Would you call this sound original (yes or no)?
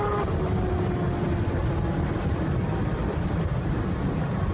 yes